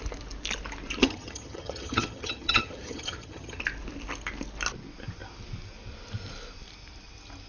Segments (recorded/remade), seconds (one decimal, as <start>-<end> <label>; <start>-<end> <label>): 0.0-1.0 recorded; 1.0-3.6 remade; 3.6-7.5 recorded